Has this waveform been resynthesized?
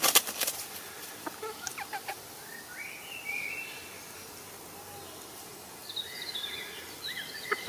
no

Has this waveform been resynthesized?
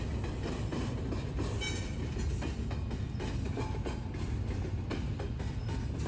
no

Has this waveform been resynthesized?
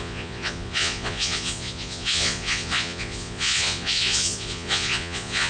yes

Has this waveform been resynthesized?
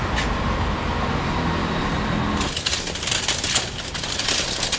no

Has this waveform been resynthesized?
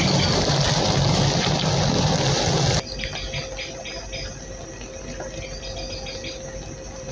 no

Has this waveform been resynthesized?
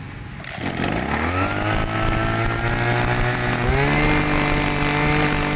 no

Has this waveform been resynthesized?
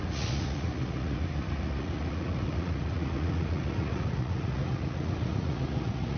yes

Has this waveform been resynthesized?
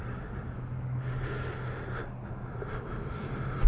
no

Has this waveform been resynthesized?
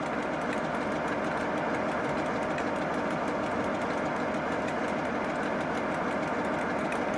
no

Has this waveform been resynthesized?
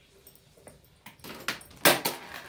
no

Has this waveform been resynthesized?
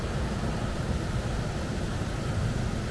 no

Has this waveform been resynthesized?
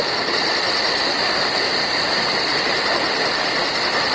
no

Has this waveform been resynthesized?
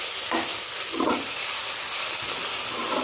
no